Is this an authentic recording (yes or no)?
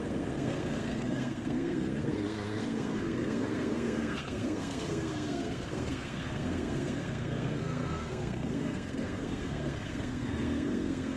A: no